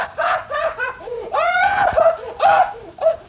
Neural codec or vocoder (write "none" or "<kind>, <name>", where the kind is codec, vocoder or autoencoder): vocoder, Vocos